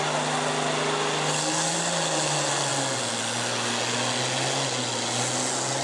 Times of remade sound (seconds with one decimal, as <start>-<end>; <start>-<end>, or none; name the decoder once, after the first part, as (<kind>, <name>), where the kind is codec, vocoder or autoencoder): none

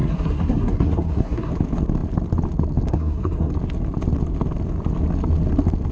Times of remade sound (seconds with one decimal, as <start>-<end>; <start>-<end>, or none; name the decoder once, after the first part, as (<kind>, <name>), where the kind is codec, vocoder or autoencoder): 0.0-1.5 (codec, SNAC); 2.9-3.5

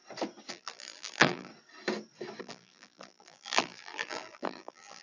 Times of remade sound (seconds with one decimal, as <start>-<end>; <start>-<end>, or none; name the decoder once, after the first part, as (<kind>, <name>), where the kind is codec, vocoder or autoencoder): 0.5-1.5 (vocoder, BigVGAN v2); 2.4-5.0

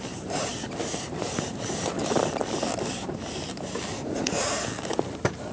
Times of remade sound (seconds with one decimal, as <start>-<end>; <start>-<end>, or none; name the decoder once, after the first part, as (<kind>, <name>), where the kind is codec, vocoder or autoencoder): 3.9-4.4 (vocoder, Vocos)

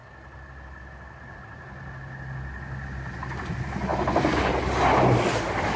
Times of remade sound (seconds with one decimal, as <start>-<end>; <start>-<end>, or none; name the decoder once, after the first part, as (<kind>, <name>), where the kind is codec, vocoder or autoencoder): none

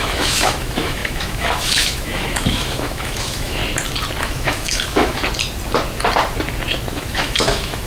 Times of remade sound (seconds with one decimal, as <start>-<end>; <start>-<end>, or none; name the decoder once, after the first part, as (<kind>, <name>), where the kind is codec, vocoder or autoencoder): 0.0-3.6 (autoencoder, DAC-VAE); 4.2-5.2; 6.9-7.9

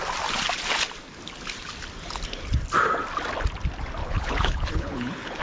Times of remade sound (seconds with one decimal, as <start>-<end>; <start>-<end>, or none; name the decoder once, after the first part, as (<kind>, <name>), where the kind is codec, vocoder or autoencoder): 4.0-5.4 (codec, HILCodec)